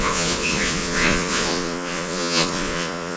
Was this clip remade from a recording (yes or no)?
yes